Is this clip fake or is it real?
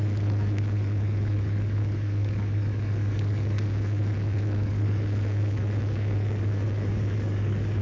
fake